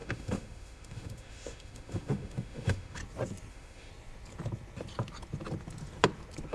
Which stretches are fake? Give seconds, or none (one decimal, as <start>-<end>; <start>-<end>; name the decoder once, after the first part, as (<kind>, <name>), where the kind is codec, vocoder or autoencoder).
0.0-3.0 (autoencoder, DAC-VAE); 3.5-3.9